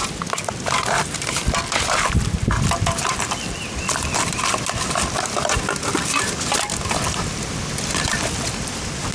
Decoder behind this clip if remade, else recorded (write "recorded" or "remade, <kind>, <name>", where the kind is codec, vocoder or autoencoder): recorded